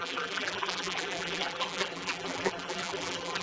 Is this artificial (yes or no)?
yes